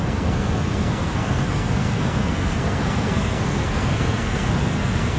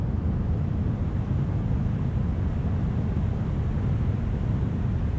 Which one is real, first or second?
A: second